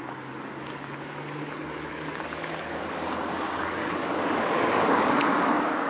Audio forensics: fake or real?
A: fake